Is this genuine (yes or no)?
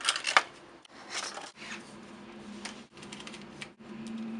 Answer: yes